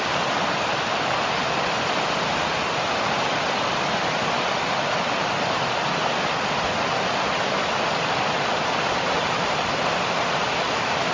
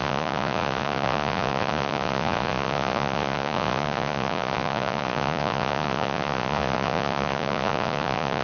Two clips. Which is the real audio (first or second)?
first